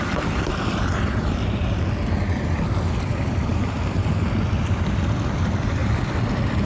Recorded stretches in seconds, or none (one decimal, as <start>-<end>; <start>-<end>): 0.0-1.1; 1.8-5.8; 6.3-6.7